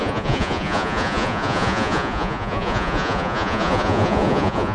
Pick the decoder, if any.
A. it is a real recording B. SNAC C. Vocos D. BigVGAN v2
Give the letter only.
C